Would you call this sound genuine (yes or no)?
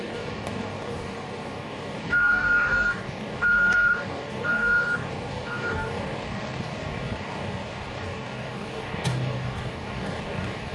no